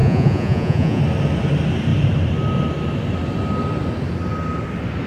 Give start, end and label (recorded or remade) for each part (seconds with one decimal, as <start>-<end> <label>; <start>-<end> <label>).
0.0-1.0 remade; 1.0-5.1 recorded